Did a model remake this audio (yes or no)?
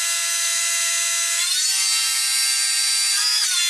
no